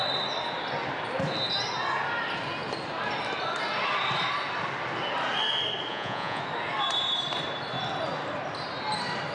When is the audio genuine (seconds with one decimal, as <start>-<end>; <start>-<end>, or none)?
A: 0.0-5.9; 6.4-9.3